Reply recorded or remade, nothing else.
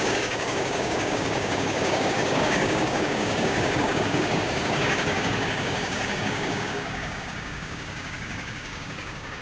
remade